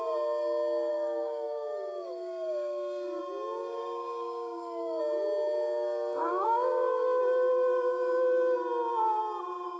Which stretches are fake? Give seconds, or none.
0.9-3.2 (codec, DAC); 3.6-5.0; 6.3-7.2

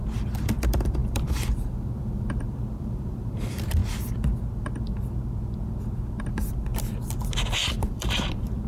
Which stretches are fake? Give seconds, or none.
0.0-3.8 (vocoder, BigVGAN v2); 6.2-6.7; 7.7-8.7

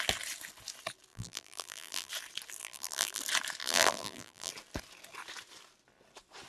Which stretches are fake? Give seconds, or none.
1.1-2.1 (vocoder, BigVGAN v2); 2.6-3.2; 3.6-4.5

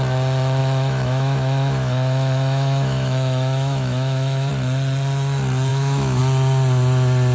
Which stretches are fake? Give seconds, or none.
0.6-4.5 (autoencoder, DAC-VAE); 5.7-6.2

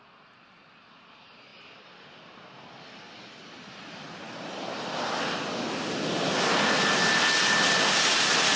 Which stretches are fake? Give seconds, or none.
none

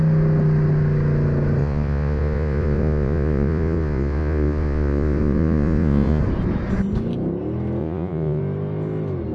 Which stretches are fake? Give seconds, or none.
1.6-6.2 (vocoder, Vocos); 7.8-8.4

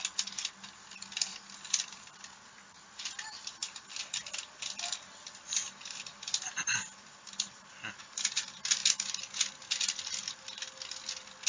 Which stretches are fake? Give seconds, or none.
1.3-3.1 (vocoder, BigVGAN v2); 3.6-7.9